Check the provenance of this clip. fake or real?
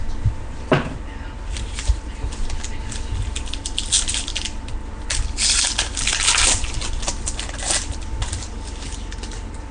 real